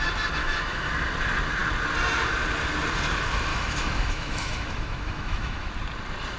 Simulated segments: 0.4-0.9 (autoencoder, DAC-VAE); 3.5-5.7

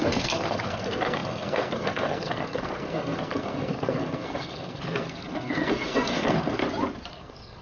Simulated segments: 0.0-6.6 (codec, SNAC); 7.1-7.6

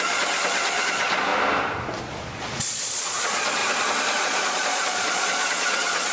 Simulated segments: 0.0-1.3 (vocoder, Vocos); 2.0-3.6; 4.2-6.1

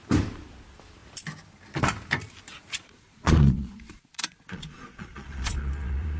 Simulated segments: 2.7-6.2 (vocoder, Vocos)

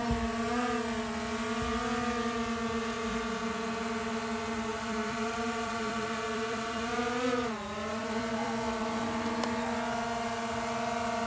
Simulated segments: 4.7-7.0 (vocoder, BigVGAN v2); 8.0-9.0